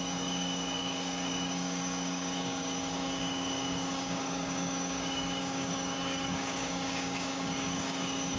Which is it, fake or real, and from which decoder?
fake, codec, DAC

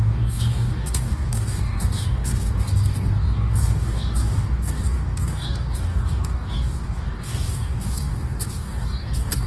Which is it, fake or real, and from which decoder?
fake, codec, DAC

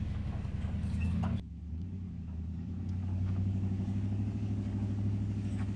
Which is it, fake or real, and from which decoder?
fake, codec, DAC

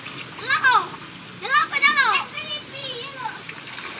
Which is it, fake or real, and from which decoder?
real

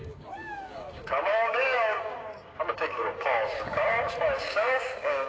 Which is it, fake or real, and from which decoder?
fake, codec, DAC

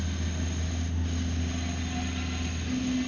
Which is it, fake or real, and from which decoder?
real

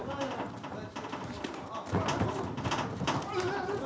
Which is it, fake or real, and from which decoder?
real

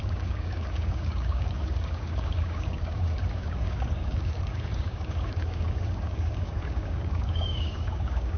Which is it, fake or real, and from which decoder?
fake, codec, DAC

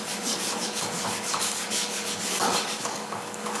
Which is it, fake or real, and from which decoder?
fake, codec, DAC